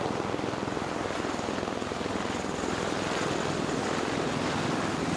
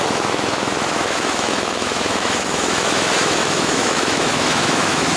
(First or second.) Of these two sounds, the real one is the first